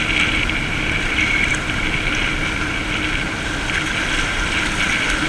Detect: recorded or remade recorded